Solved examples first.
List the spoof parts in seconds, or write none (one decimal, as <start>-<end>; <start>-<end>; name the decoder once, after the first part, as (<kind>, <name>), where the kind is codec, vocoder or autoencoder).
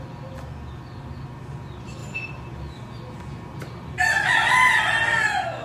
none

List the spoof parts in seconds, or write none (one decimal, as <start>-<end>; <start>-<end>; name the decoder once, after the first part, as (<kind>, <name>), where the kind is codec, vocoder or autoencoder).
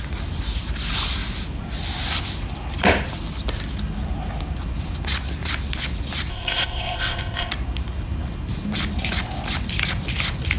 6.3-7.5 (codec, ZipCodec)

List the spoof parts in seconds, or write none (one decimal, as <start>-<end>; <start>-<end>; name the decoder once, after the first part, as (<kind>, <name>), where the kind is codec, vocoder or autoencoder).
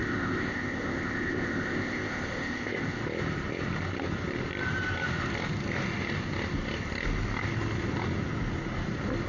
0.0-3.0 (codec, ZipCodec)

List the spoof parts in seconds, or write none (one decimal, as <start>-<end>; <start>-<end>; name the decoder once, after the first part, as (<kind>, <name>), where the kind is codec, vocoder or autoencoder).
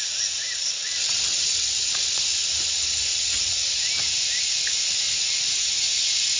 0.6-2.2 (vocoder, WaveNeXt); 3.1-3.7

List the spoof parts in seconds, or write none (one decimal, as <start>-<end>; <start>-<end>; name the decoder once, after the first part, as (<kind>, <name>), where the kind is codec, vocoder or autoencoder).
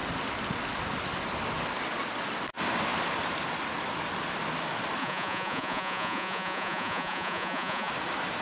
5.0-7.9 (vocoder, Vocos)